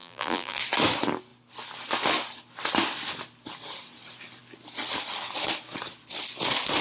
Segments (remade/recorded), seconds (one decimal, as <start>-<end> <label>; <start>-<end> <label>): 0.0-0.6 remade; 0.6-6.8 recorded